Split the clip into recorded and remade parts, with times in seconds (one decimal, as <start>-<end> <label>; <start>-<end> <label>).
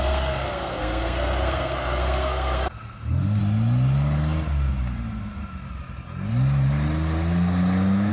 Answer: 0.0-3.4 remade; 3.4-8.1 recorded